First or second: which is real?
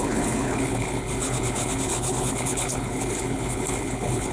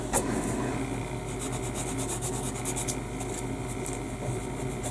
second